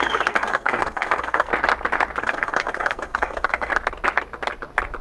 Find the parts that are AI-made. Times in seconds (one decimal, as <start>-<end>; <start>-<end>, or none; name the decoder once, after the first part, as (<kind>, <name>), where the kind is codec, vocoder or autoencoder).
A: 0.0-1.5 (codec, SNAC); 2.2-3.7